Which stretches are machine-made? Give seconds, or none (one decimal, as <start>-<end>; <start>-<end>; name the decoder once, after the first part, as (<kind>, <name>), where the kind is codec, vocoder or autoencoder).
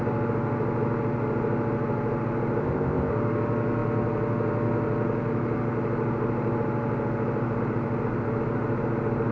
2.6-3.1 (codec, ZipCodec)